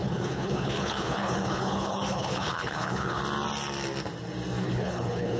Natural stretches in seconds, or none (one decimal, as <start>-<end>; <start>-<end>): 3.2-4.6